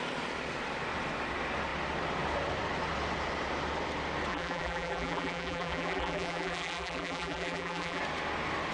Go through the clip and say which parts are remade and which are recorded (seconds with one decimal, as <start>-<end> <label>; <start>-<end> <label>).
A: 0.0-4.3 recorded; 4.3-8.0 remade; 8.0-8.7 recorded